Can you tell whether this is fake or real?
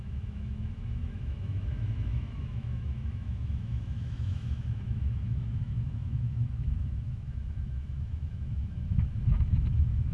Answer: fake